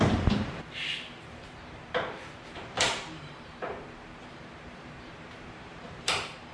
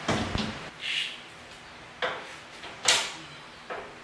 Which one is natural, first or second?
second